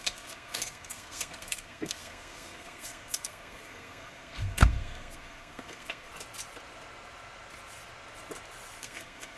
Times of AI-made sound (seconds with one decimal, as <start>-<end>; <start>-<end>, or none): 0.0-6.1; 8.8-9.4